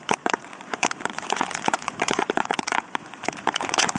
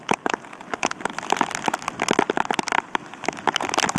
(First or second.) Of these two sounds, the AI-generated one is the first